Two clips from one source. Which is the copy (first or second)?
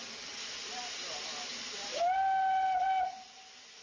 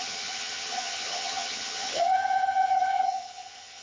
second